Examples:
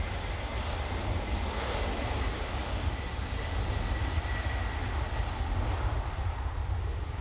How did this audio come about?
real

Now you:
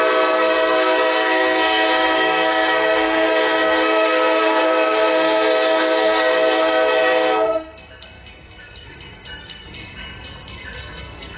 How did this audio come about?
fake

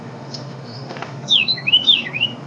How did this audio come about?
fake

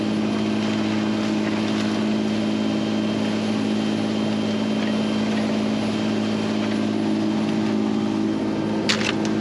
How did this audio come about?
real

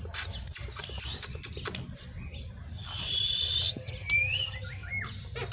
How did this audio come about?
real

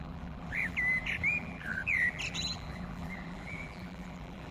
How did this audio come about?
fake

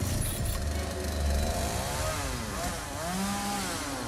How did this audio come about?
real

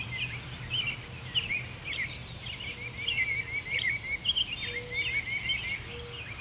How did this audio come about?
real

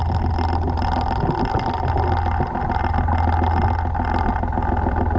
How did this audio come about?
real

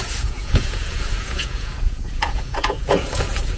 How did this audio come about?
fake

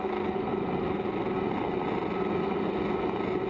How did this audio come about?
real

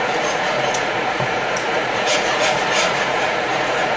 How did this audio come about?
fake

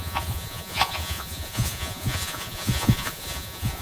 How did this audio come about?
fake